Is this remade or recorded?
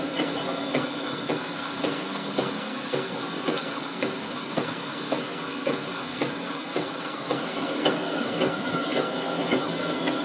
remade